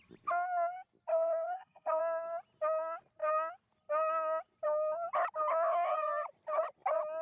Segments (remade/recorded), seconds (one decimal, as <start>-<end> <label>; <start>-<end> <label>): 0.0-1.1 recorded; 1.1-2.0 remade; 2.0-7.2 recorded